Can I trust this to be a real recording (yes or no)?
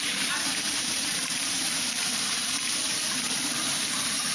no